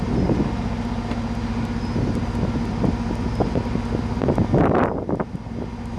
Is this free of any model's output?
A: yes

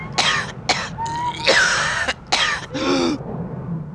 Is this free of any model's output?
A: yes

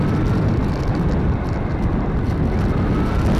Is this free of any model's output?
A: yes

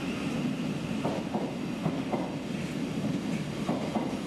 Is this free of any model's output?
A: yes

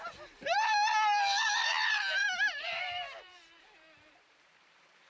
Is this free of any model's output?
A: no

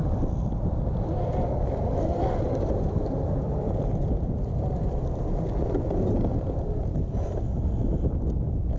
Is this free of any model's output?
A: no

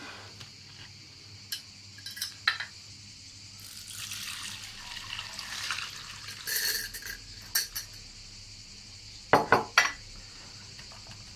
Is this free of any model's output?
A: yes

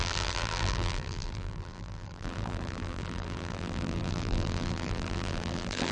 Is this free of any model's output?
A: no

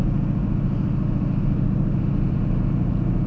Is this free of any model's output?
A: yes